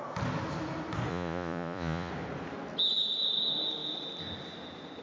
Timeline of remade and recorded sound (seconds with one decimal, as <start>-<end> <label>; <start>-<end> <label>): 0.0-1.1 recorded; 1.1-2.1 remade; 2.1-5.0 recorded